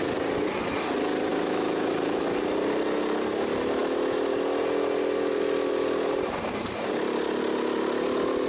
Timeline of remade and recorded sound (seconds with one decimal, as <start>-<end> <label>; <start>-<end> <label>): 0.0-1.3 recorded; 1.3-1.9 remade; 1.9-8.5 recorded